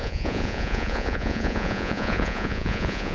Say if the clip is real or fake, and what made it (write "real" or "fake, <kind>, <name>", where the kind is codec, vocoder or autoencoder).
fake, vocoder, Vocos